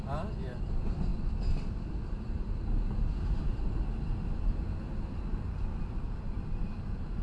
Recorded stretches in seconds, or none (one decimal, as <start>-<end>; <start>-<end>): 0.0-7.2